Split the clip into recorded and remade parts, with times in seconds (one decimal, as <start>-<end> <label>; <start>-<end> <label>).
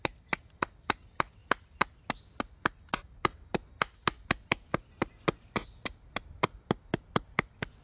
0.0-7.8 recorded